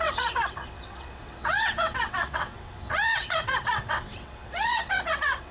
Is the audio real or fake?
fake